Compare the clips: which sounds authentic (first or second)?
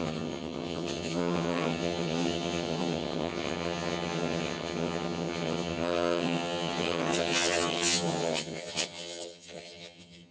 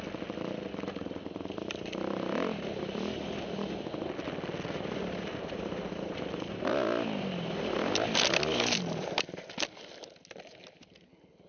second